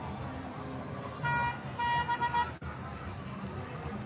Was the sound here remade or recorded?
recorded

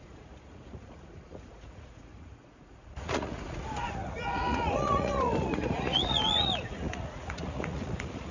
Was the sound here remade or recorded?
remade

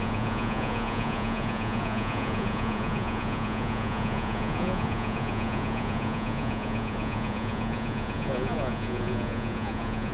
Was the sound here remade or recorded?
remade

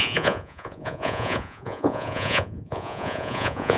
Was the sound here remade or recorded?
remade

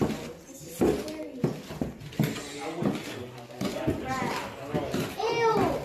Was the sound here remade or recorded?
recorded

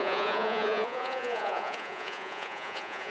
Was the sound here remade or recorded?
remade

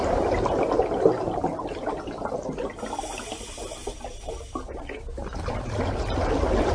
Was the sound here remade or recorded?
recorded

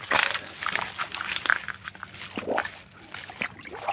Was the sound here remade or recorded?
recorded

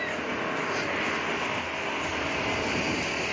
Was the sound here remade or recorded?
recorded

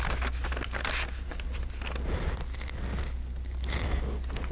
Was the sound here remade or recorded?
recorded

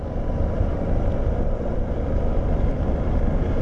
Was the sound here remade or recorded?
recorded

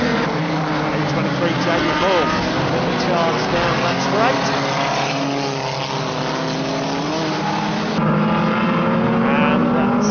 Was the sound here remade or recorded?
recorded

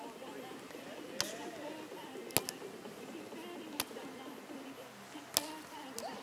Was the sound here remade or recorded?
recorded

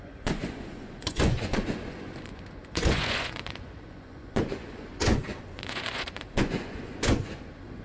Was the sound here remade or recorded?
remade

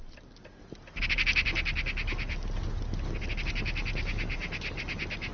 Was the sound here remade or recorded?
recorded